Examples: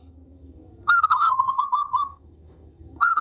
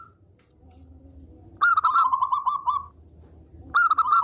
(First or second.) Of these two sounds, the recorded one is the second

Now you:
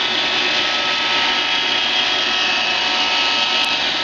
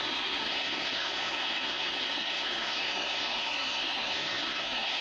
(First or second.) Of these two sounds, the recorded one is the first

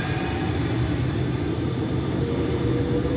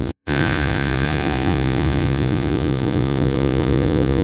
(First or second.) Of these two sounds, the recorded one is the first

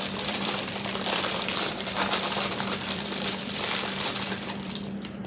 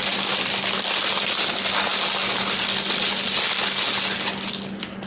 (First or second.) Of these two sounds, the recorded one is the second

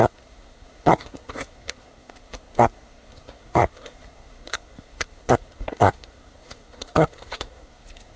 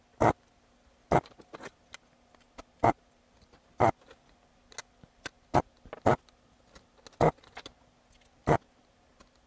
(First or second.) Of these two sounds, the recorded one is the second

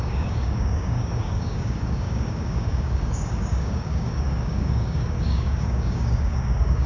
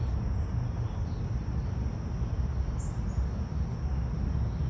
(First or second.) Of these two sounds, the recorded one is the second